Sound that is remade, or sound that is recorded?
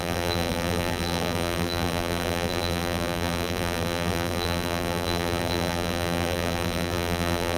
remade